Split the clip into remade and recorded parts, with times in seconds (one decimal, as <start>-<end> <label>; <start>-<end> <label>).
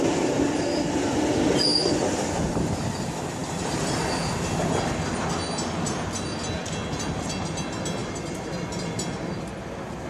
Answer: 0.0-1.7 recorded; 1.7-2.5 remade; 2.5-8.0 recorded; 8.0-9.4 remade; 9.4-10.1 recorded